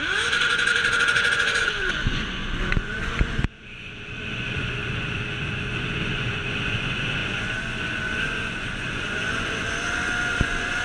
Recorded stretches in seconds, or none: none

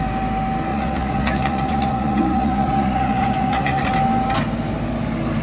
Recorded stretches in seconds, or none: 0.0-0.7; 3.9-5.4

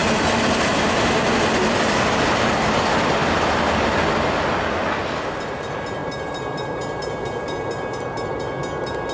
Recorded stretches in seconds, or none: 0.0-9.1

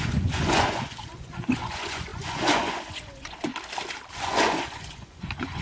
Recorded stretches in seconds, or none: 3.5-4.1

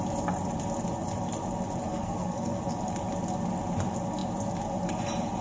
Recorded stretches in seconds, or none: 0.0-1.9; 2.6-5.4

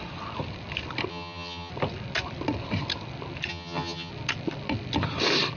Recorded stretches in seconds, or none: 0.0-1.1; 1.7-3.5; 4.1-5.6

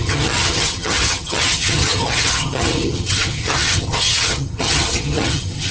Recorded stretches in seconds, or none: none